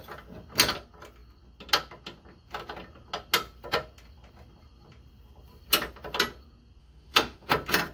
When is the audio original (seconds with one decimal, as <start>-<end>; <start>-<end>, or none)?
0.0-6.8; 7.5-7.9